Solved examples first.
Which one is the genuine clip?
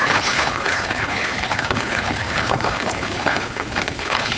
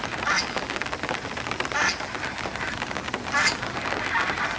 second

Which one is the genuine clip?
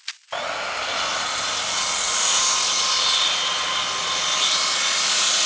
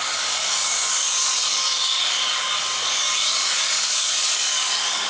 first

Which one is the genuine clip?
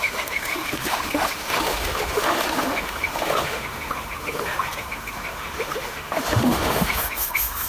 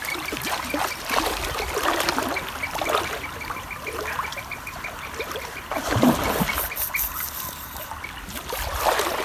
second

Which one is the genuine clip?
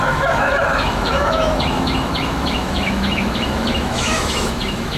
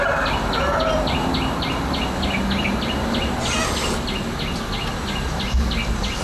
second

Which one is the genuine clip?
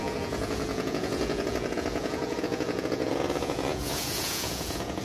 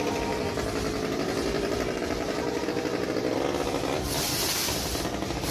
second